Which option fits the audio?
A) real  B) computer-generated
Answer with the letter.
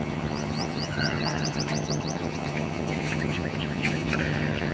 B